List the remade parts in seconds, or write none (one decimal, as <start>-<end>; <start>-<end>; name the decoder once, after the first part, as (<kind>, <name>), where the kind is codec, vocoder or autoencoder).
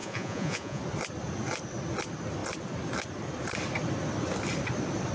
0.0-0.8 (vocoder, Vocos)